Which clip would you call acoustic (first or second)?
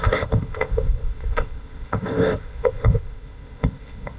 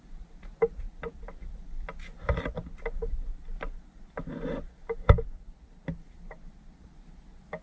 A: second